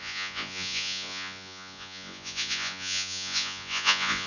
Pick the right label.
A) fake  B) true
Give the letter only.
A